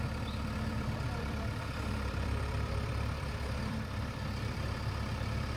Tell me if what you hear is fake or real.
fake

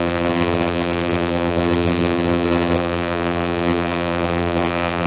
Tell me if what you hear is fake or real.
fake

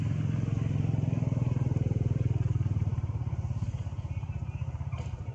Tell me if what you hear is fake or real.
fake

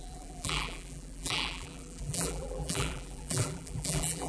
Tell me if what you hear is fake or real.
fake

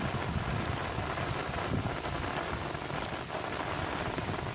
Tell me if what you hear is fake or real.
real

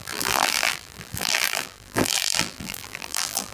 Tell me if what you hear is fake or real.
fake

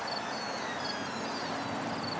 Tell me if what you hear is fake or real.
real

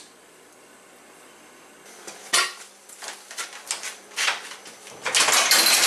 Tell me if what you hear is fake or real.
real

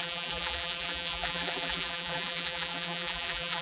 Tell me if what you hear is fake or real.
fake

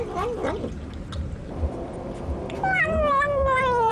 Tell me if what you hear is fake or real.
fake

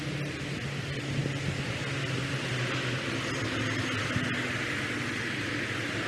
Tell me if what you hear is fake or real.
real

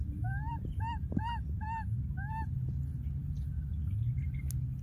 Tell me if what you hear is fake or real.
real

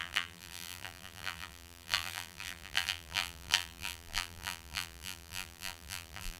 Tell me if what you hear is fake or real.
fake